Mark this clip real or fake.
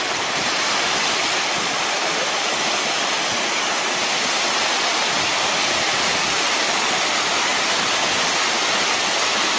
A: real